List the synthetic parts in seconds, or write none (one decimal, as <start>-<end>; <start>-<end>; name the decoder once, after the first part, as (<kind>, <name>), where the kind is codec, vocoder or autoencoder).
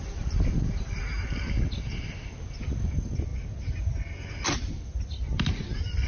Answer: none